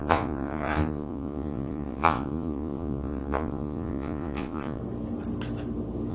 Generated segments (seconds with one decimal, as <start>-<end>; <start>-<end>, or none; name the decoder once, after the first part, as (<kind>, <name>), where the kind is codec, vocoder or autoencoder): 0.0-4.8 (vocoder, Vocos)